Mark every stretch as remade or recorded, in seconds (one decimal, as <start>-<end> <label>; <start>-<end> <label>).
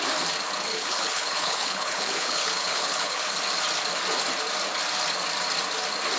0.0-0.7 recorded; 0.7-3.3 remade; 3.3-6.2 recorded